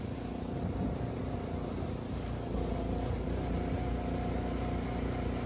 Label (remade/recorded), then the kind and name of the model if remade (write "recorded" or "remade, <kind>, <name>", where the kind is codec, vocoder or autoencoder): recorded